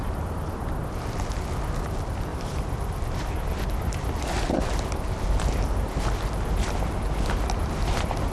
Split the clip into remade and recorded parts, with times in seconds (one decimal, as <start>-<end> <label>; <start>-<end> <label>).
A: 0.0-2.3 recorded; 2.3-3.3 remade; 3.3-8.3 recorded